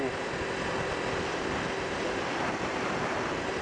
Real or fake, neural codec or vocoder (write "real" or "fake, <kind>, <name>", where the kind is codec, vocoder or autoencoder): real